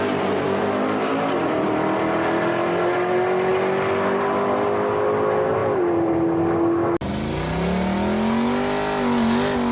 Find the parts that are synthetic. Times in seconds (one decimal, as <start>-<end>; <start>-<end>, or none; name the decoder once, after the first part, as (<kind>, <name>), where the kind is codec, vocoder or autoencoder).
none

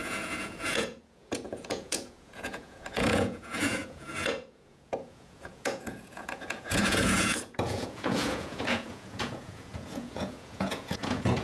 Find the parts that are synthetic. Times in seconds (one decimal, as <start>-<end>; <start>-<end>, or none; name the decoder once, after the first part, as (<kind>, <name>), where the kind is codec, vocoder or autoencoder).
0.0-11.4 (vocoder, Vocos)

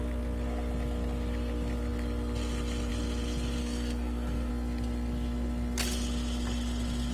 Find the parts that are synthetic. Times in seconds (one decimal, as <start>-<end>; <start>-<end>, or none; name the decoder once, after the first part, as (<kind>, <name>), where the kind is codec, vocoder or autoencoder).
3.6-4.5 (codec, SNAC)

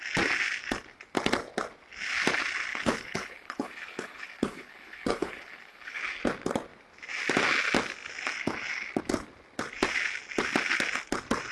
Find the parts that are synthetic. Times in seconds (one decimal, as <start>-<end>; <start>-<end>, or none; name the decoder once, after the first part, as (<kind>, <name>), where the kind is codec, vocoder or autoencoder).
2.7-6.0 (codec, HILCodec)

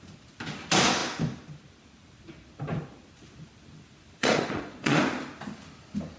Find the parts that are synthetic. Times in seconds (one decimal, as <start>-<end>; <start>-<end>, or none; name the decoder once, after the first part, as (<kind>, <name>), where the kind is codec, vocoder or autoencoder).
4.2-5.0 (vocoder, Vocos)

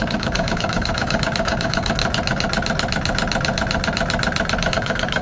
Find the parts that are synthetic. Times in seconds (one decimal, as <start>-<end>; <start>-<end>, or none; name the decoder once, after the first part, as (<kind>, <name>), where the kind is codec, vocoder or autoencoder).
0.0-2.0 (codec, DAC); 4.7-5.2

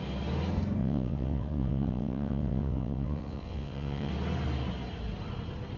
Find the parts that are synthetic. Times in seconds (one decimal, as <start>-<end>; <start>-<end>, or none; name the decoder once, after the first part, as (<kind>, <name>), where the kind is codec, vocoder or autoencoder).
0.8-4.1 (vocoder, WaveNeXt)

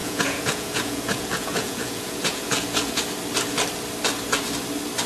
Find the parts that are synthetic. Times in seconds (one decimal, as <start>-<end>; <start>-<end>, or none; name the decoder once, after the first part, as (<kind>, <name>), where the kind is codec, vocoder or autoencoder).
0.0-3.0 (vocoder, Vocos)